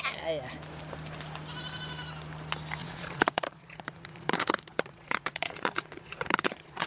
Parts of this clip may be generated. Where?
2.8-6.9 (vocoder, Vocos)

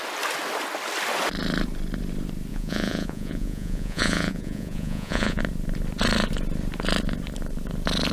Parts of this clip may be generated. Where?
2.5-5.4 (vocoder, Vocos)

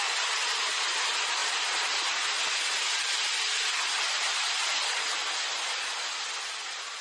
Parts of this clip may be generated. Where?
none

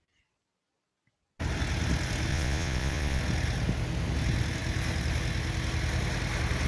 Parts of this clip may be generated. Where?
2.3-3.2 (vocoder, Vocos)

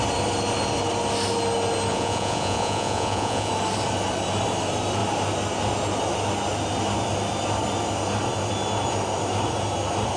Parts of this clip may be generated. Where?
1.9-3.5 (vocoder, Vocos)

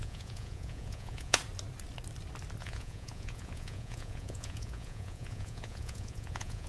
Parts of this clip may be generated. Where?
0.0-1.4 (vocoder, Vocos); 2.6-6.7

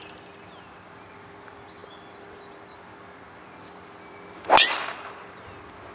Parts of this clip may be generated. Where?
none

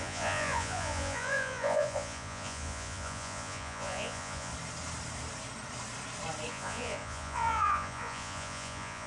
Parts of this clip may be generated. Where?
0.0-4.5 (vocoder, Vocos); 6.5-9.1